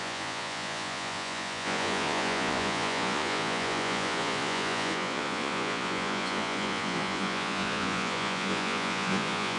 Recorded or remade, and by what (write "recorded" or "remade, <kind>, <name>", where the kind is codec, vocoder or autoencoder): remade, vocoder, Vocos